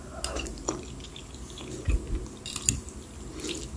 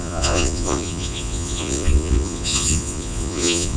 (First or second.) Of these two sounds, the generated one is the second